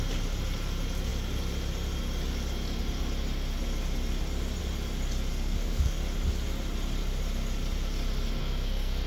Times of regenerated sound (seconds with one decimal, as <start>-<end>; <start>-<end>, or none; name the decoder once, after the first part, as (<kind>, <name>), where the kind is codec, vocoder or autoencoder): 5.3-6.0 (codec, SNAC); 8.4-9.1